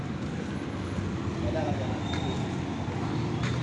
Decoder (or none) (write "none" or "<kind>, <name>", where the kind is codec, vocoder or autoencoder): none